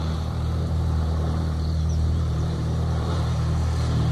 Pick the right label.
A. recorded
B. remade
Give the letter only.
B